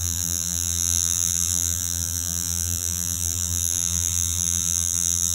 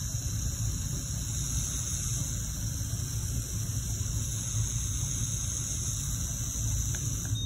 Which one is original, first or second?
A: second